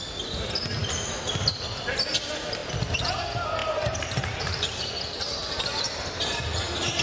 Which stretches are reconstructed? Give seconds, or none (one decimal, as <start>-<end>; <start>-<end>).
3.6-4.9; 5.4-6.4